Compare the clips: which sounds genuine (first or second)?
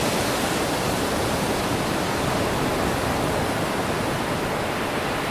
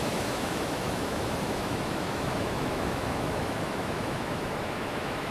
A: first